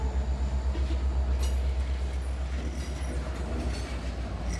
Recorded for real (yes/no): yes